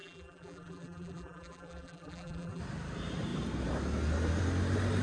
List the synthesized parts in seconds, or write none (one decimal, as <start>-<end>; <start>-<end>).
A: 0.0-2.6